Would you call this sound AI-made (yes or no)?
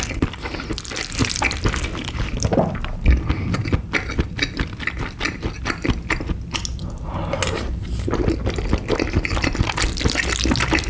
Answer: no